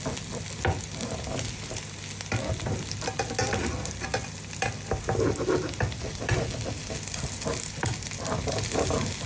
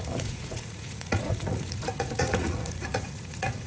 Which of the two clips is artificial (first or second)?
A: second